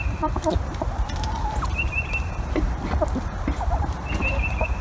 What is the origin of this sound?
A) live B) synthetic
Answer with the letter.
B